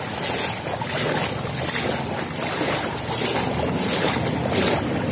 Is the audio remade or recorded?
recorded